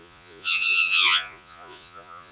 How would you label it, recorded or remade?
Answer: remade